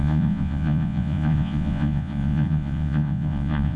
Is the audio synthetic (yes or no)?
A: yes